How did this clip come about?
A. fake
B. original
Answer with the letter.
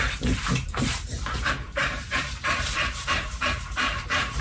A